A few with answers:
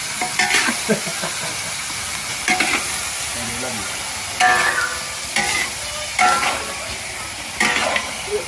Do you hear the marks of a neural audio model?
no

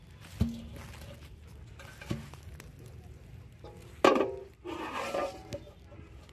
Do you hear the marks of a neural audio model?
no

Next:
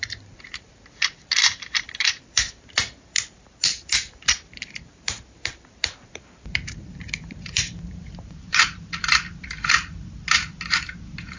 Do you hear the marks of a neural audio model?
yes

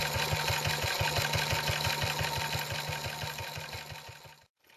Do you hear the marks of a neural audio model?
no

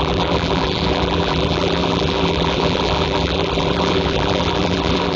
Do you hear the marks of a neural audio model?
yes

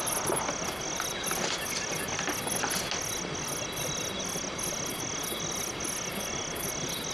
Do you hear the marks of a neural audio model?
no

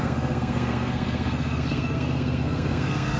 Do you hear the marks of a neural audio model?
yes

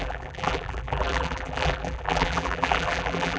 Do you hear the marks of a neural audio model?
yes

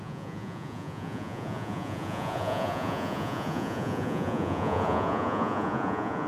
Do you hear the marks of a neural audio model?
yes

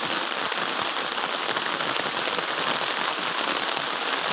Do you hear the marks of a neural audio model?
no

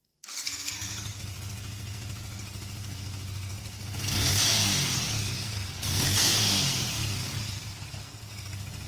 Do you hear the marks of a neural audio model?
yes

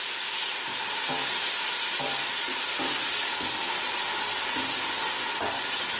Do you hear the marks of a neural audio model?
no